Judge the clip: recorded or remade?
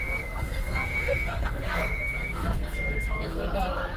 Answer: remade